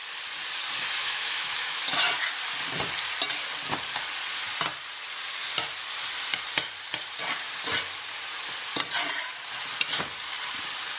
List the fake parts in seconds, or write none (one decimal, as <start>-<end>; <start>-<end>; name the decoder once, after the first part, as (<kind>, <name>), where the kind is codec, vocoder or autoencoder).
1.0-2.0 (autoencoder, DAC-VAE)